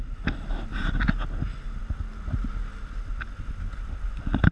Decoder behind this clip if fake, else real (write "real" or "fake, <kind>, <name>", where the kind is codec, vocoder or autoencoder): real